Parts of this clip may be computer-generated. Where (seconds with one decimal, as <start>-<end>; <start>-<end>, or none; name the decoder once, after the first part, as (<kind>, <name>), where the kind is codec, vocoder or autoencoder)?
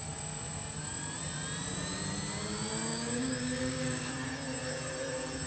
2.9-4.1 (codec, DAC)